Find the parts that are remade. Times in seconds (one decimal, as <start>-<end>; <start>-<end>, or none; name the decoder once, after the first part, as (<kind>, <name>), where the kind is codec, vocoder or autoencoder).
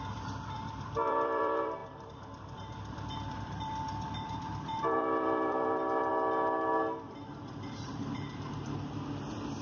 0.0-6.1 (vocoder, BigVGAN v2); 7.1-9.6